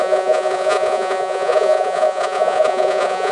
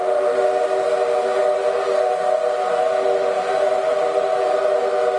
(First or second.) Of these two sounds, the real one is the second